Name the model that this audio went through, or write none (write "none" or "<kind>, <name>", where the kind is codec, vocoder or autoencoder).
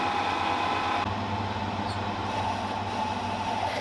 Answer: none